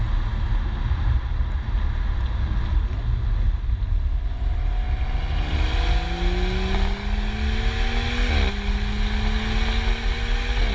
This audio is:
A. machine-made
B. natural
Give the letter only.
B